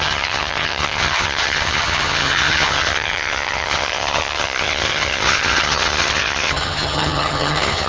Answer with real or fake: fake